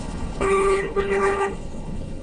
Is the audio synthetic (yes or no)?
yes